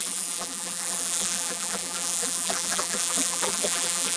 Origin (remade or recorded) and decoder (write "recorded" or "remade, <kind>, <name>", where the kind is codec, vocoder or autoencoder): remade, vocoder, BigVGAN v2